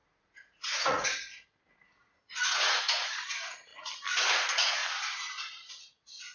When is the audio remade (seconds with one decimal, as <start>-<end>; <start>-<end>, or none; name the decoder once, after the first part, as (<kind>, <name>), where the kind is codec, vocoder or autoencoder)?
0.0-3.7 (vocoder, Vocos); 4.3-4.8; 5.7-6.3

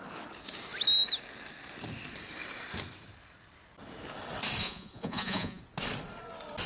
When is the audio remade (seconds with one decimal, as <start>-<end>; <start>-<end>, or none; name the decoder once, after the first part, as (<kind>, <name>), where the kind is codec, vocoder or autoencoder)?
4.6-5.6 (vocoder, Vocos)